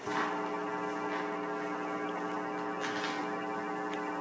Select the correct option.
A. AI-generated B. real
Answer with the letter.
B